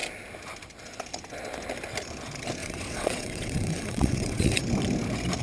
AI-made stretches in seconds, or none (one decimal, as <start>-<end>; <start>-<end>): 2.6-4.6